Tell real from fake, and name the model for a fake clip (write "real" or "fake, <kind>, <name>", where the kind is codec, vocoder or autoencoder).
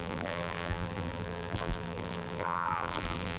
fake, vocoder, BigVGAN v2